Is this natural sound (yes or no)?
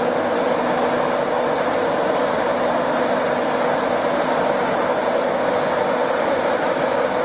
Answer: yes